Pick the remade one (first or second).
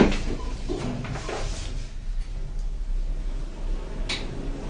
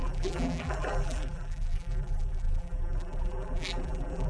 second